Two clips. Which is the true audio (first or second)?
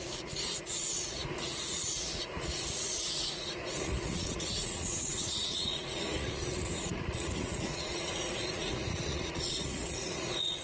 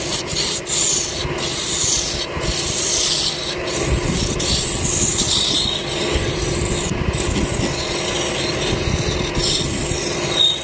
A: second